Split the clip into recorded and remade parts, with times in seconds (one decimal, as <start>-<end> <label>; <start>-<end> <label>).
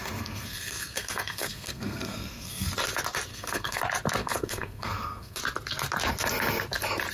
0.0-2.7 remade; 2.7-3.3 recorded; 3.3-3.8 remade; 3.8-4.2 recorded; 4.2-5.4 remade; 5.4-7.1 recorded